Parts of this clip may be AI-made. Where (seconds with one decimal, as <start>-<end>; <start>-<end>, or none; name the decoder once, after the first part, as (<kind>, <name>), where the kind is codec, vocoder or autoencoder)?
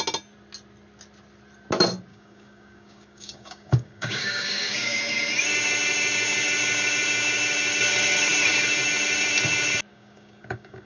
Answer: 2.1-5.0 (codec, DAC); 9.9-10.9